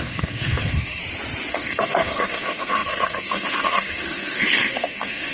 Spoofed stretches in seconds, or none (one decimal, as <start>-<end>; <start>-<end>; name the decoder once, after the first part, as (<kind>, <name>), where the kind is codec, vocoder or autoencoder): 0.0-1.0 (codec, SNAC); 1.5-5.3